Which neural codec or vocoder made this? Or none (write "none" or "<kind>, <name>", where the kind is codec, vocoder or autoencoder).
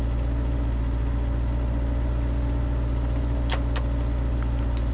none